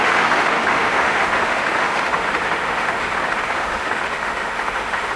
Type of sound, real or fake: fake